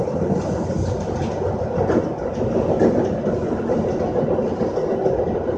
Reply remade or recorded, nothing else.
recorded